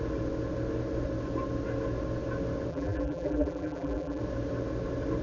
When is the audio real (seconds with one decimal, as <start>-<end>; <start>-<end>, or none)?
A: 0.0-2.7; 4.2-5.2

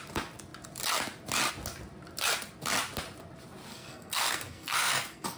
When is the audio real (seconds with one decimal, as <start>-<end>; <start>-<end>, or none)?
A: 0.0-3.7

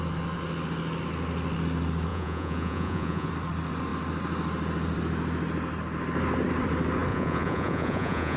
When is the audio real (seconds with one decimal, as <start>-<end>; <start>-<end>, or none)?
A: 0.0-2.1; 3.3-7.1

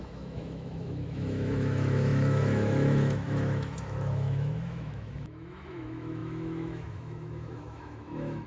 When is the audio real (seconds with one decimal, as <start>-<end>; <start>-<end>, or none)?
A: none